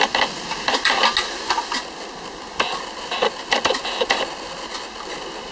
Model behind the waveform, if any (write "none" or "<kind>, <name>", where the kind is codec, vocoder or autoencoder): none